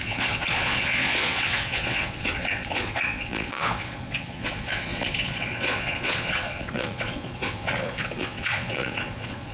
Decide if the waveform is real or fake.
fake